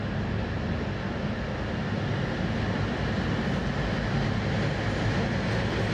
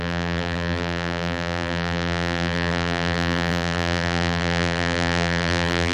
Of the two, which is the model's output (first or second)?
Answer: second